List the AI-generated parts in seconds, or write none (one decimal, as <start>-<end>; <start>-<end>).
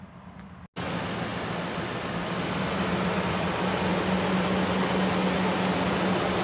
none